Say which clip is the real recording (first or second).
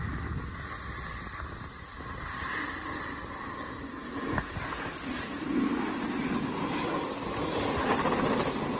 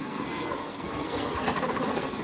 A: first